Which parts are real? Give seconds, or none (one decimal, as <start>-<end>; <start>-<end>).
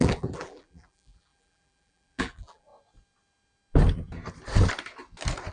2.7-5.5